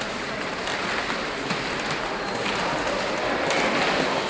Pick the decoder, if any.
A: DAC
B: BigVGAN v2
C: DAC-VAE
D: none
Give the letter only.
D